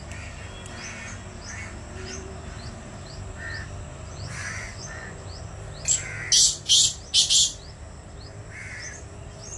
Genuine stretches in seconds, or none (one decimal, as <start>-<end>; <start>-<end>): 0.0-3.9; 5.5-9.6